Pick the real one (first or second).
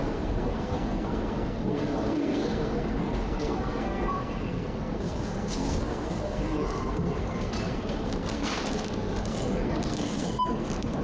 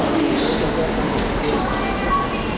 second